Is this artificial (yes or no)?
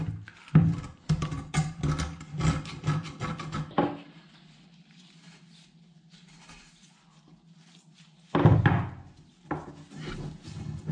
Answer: no